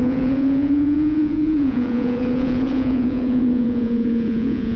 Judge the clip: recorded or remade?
remade